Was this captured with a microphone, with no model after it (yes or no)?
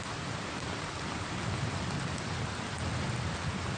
yes